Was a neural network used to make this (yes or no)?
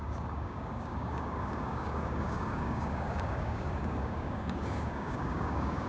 yes